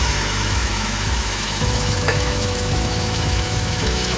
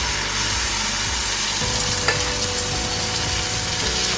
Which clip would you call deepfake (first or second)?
first